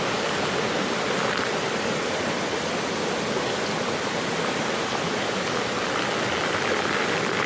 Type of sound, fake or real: real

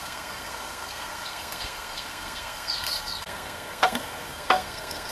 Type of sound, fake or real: fake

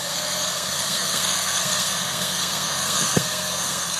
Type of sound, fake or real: fake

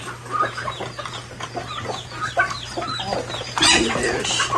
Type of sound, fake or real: real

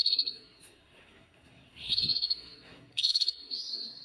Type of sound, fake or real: fake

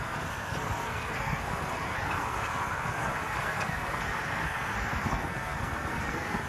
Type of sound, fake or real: fake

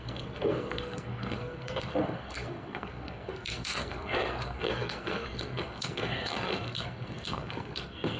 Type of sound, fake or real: fake